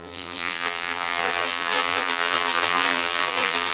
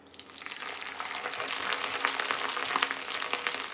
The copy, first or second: first